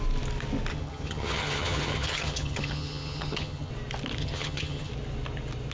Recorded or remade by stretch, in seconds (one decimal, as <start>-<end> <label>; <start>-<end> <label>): 0.0-0.7 recorded; 0.7-3.7 remade; 3.7-4.2 recorded; 4.2-4.9 remade; 4.9-5.7 recorded